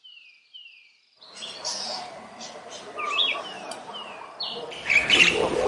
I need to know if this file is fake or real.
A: fake